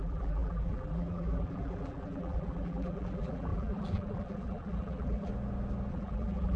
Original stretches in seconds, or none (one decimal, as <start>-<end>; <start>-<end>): 5.3-5.9